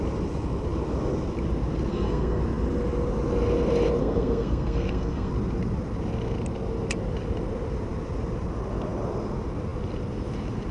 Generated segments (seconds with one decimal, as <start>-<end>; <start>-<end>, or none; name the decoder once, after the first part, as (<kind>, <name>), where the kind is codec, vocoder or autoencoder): 1.9-2.4 (codec, SNAC); 4.0-5.3